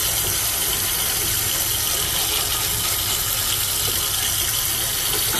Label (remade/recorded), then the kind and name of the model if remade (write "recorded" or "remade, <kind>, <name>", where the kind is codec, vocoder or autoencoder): recorded